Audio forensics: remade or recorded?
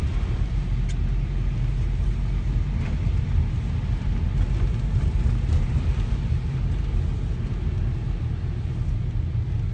recorded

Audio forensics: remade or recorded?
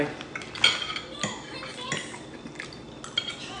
recorded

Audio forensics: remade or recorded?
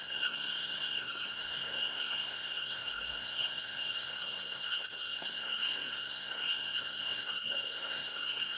remade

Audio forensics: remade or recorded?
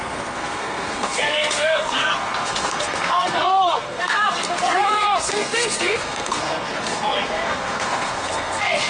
remade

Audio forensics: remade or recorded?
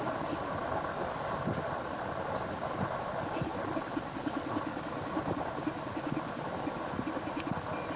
recorded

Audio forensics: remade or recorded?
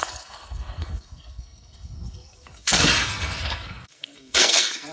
remade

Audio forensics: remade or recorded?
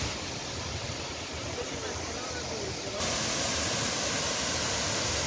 recorded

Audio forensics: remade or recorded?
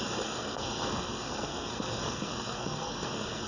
remade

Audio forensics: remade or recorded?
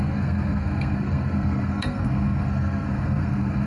remade